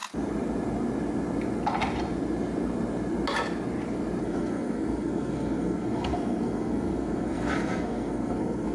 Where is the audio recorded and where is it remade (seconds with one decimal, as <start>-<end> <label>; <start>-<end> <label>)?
0.0-4.2 recorded; 4.2-8.7 remade